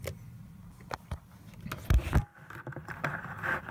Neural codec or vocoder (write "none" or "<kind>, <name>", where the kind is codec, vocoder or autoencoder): none